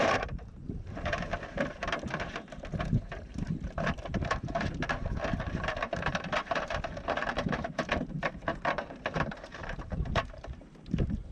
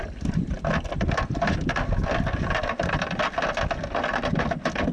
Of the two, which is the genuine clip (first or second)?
second